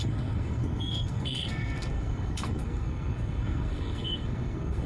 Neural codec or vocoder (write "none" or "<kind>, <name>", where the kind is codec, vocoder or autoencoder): codec, SNAC